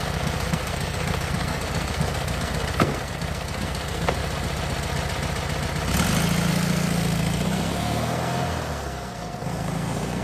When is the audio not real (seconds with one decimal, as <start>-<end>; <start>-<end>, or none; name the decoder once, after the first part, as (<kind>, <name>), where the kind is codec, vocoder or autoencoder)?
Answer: 0.0-4.2 (codec, SNAC); 6.5-10.2